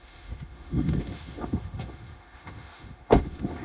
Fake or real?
fake